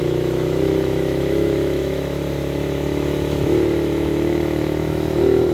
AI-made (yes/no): yes